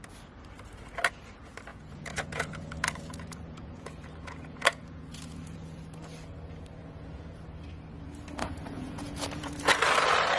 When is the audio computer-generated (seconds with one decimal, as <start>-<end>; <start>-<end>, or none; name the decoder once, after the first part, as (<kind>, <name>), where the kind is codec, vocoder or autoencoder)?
1.7-5.8 (vocoder, Vocos); 6.8-7.4; 8.4-9.7

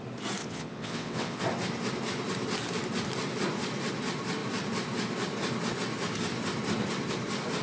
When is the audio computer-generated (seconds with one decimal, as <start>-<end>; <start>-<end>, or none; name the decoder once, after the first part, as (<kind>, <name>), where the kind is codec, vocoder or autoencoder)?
0.4-1.4 (vocoder, WaveNeXt)

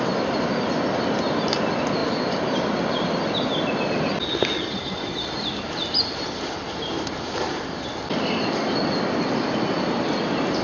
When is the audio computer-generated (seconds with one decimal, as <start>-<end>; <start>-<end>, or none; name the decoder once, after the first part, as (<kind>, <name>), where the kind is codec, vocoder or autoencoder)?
none

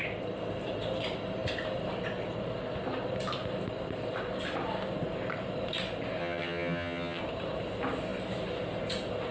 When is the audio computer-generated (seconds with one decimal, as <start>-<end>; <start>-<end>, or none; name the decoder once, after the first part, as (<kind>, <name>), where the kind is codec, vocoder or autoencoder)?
6.2-7.2 (vocoder, HiFi-GAN)

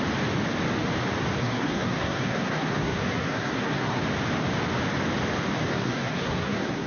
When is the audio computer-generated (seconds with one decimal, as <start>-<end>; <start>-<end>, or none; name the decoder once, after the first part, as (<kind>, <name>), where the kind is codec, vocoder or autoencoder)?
1.4-4.0 (codec, SNAC); 5.7-6.9

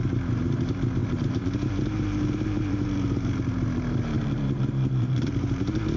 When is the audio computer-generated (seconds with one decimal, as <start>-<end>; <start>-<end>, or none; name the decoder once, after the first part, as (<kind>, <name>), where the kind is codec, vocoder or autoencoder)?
0.0-6.0 (vocoder, BigVGAN v2)

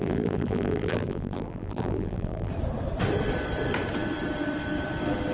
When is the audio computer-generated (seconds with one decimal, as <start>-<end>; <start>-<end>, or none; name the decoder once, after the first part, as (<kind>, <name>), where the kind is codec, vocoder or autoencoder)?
0.0-2.5 (vocoder, BigVGAN v2)

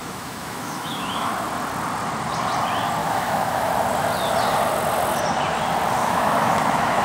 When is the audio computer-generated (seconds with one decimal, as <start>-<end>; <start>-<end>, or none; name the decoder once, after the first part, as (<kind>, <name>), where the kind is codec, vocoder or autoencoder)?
0.0-1.3 (autoencoder, DAC-VAE); 3.0-3.7; 6.0-7.0